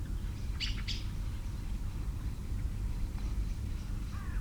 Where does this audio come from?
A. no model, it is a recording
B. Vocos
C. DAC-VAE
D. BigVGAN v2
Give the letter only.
A